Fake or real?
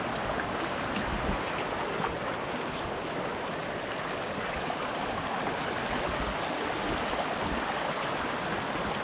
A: real